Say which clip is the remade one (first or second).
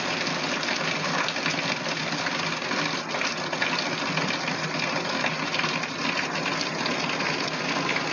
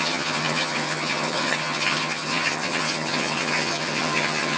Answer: second